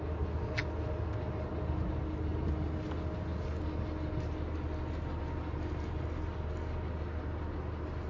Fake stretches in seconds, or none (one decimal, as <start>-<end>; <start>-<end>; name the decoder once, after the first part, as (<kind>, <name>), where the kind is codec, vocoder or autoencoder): none